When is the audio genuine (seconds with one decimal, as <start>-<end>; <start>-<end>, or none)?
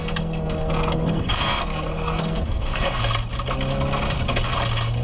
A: 3.0-5.0